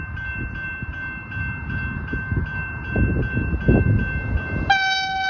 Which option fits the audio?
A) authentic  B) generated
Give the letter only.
A